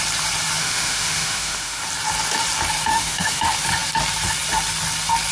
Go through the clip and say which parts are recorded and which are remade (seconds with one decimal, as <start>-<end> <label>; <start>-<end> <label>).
0.0-0.6 recorded; 0.6-1.8 remade; 1.8-2.9 recorded; 2.9-3.4 remade; 3.4-5.3 recorded